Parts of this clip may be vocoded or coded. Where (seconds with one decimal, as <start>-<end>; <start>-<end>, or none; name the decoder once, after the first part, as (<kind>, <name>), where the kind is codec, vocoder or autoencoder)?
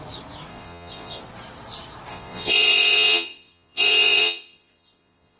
0.5-1.2 (vocoder, Vocos); 2.1-5.4